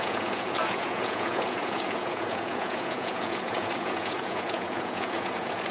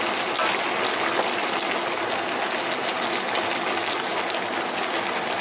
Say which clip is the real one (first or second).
second